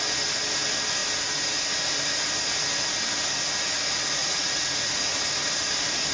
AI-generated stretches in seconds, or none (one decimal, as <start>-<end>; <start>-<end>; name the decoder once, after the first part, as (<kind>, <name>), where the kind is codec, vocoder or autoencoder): 4.2-5.2 (vocoder, Vocos)